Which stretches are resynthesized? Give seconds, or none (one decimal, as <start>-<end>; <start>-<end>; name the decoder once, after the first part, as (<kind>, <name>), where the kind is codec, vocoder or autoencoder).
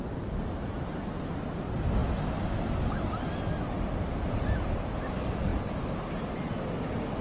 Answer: none